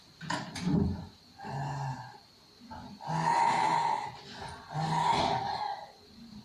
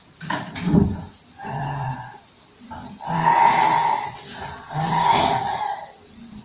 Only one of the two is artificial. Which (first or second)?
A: second